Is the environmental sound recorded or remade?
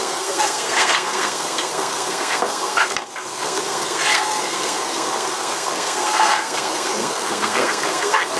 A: remade